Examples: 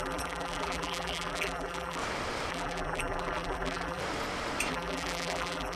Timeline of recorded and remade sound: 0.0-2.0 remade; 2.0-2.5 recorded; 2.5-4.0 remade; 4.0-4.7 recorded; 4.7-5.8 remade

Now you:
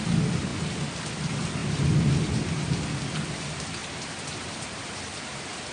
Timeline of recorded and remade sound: 0.0-3.8 recorded; 3.8-5.2 remade; 5.2-5.7 recorded

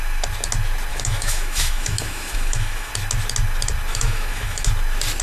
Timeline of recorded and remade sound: 0.0-0.9 recorded; 0.9-2.9 remade; 2.9-3.9 recorded; 3.9-4.7 remade; 4.7-5.2 recorded